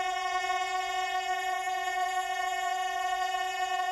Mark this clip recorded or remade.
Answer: remade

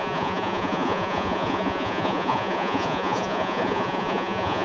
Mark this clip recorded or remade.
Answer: remade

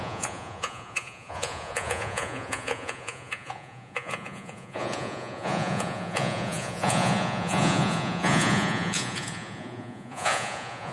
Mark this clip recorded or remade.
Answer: remade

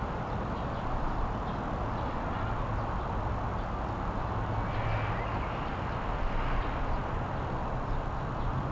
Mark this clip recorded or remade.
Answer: recorded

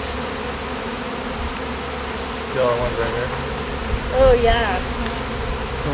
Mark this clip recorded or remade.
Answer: recorded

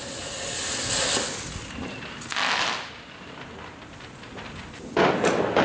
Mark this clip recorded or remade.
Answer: recorded